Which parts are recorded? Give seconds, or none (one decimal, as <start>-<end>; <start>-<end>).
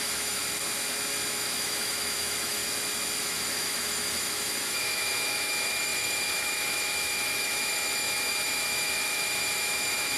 0.4-1.3; 2.6-3.2